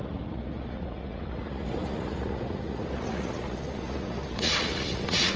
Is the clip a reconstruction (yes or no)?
yes